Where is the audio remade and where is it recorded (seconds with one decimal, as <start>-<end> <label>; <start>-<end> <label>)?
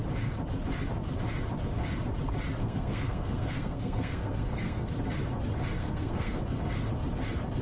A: 0.0-2.6 recorded; 2.6-4.9 remade; 4.9-5.8 recorded; 5.8-6.4 remade; 6.4-7.6 recorded